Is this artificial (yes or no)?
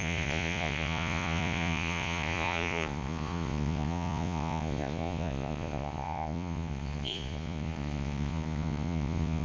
yes